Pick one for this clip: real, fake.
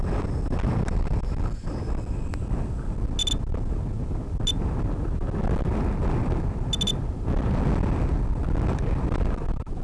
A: real